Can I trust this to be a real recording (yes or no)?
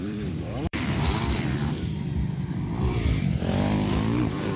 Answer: no